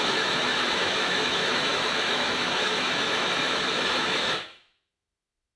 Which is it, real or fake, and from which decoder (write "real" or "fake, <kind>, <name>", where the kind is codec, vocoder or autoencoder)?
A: fake, autoencoder, DAC-VAE